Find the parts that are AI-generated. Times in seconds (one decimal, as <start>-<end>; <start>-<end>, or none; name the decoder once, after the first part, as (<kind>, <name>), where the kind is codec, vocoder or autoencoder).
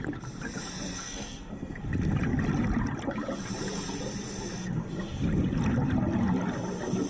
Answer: 0.9-1.8 (codec, SNAC)